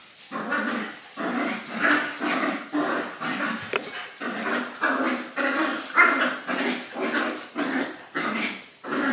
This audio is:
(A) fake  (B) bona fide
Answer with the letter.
B